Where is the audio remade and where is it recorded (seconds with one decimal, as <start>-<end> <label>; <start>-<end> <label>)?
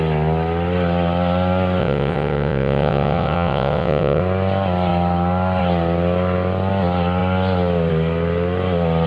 0.0-1.8 recorded; 1.8-4.2 remade; 4.2-9.1 recorded